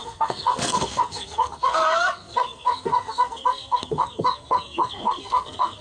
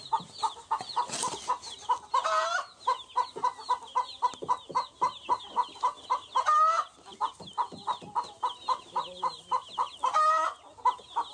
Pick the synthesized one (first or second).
first